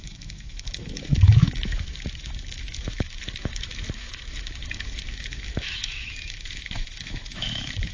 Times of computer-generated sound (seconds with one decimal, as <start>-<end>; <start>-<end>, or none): 0.0-7.9